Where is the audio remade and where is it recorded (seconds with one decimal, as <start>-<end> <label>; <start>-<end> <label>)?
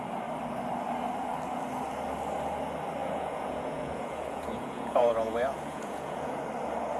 0.0-3.0 recorded; 3.0-6.4 remade; 6.4-7.0 recorded